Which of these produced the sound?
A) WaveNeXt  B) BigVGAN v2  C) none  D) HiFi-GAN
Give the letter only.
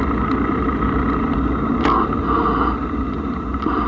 C